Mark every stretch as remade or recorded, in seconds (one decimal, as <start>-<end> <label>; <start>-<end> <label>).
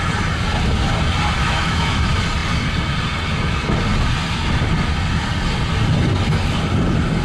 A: 0.0-1.4 recorded; 1.4-2.0 remade; 2.0-7.2 recorded